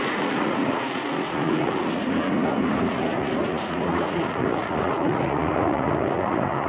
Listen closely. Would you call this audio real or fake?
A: fake